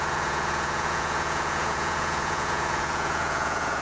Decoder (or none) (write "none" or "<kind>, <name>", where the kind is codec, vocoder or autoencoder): vocoder, Vocos